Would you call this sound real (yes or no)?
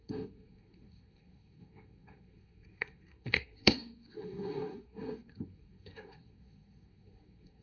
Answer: no